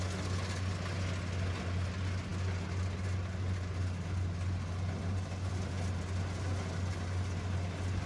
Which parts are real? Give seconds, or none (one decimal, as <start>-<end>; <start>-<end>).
0.0-8.1